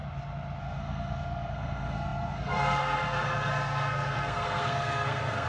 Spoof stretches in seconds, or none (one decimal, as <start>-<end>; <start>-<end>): 0.6-5.5